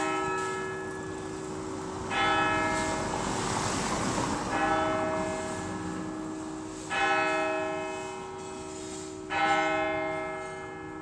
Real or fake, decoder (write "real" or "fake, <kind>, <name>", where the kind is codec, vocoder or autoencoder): real